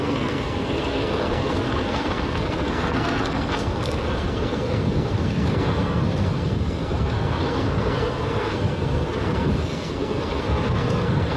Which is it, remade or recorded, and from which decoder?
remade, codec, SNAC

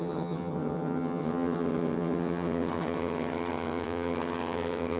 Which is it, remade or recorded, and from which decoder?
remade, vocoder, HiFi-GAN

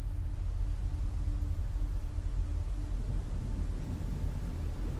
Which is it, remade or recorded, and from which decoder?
recorded